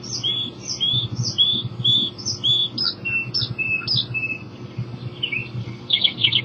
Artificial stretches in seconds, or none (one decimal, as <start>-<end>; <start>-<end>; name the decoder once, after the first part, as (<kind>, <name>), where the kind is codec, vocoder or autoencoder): 5.6-6.4 (codec, SNAC)